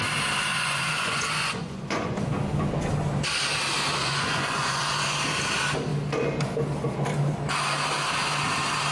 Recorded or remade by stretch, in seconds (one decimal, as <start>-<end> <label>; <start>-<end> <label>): 0.0-0.5 recorded; 0.5-2.2 remade; 2.2-4.0 recorded; 4.0-4.8 remade; 4.8-8.9 recorded